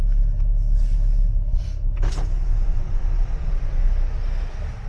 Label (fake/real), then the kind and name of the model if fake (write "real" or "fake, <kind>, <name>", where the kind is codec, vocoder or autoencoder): real